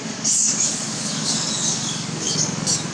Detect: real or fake fake